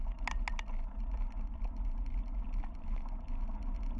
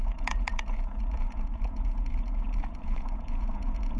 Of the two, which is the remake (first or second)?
second